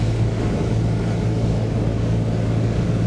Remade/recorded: remade